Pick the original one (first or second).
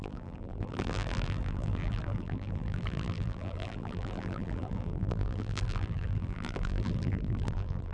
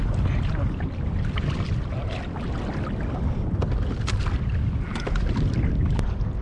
second